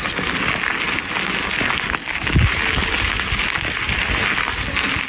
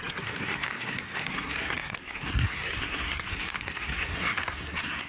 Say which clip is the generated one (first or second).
second